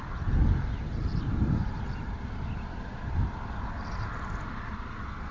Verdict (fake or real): real